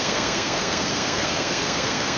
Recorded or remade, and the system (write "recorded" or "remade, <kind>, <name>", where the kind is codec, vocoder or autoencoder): remade, codec, SNAC